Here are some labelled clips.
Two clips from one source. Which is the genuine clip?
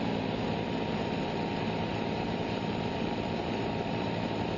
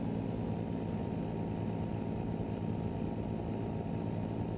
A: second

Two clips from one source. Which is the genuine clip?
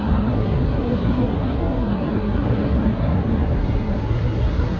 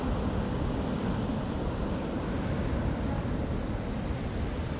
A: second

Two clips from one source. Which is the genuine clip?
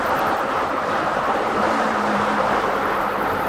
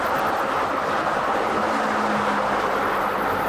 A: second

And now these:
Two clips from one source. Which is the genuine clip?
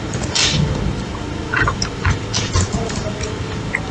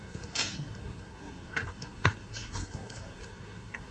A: first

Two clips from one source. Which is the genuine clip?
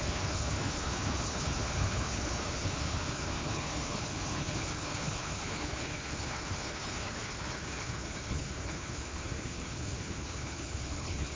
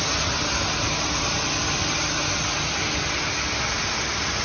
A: second